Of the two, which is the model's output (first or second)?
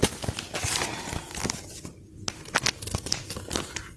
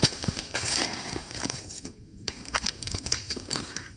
second